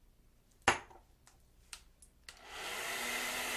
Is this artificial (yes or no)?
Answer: no